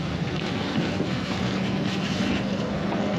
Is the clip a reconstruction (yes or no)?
yes